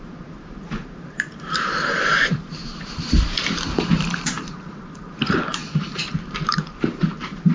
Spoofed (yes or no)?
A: yes